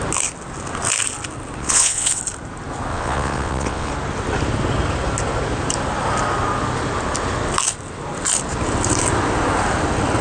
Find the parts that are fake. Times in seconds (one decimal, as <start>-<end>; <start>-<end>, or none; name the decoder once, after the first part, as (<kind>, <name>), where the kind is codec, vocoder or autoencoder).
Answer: 1.6-2.2 (vocoder, WaveNeXt); 2.9-3.9